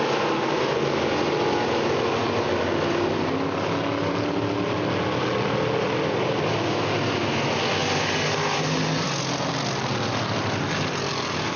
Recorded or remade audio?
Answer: recorded